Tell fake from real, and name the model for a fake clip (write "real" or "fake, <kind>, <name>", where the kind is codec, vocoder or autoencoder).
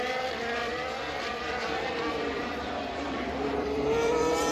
fake, vocoder, BigVGAN v2